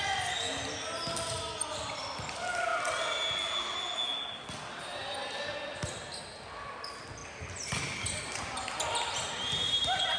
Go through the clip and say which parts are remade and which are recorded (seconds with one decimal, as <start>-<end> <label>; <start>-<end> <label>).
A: 0.0-10.2 recorded